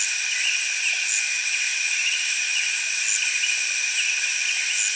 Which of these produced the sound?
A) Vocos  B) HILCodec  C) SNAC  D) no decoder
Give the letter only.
D